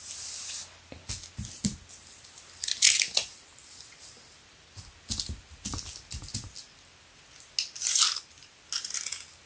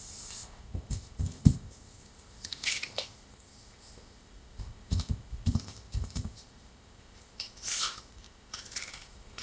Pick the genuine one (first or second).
first